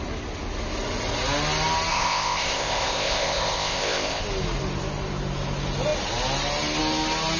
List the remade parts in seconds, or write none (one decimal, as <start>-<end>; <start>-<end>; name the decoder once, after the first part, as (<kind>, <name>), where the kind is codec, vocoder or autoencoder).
1.9-4.2 (codec, ZipCodec)